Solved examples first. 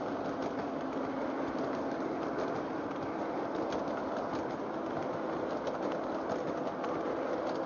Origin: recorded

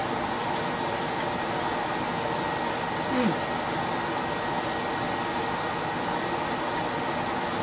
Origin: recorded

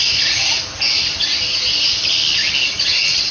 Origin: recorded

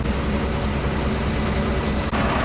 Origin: recorded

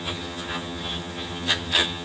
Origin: remade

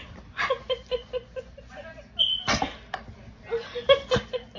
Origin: recorded